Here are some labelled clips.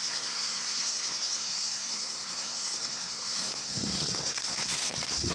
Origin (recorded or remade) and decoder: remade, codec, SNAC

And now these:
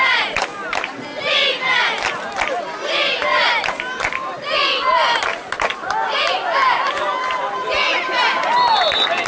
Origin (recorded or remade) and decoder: recorded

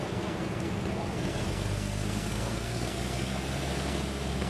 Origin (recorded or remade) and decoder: remade, codec, SNAC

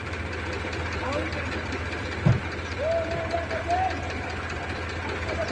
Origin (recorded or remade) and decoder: recorded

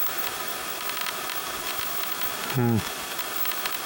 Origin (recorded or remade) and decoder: remade, vocoder, BigVGAN v2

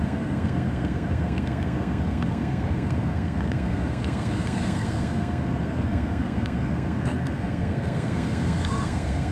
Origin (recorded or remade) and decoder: remade, codec, SNAC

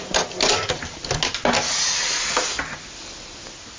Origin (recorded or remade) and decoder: recorded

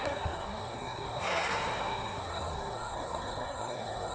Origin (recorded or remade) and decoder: remade, codec, SNAC